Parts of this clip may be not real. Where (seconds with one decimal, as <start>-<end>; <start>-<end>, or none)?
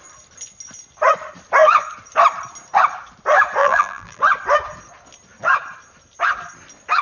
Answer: 3.6-4.2